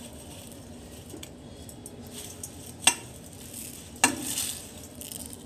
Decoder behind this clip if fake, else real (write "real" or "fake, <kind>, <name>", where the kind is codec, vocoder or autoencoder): real